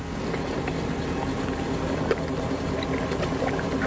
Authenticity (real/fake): real